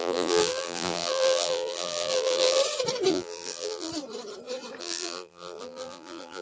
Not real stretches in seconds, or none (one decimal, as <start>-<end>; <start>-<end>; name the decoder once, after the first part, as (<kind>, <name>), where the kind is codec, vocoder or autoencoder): 0.0-2.6 (vocoder, BigVGAN v2); 3.1-3.9; 4.8-6.4